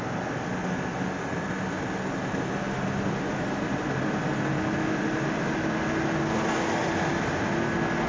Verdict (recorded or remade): recorded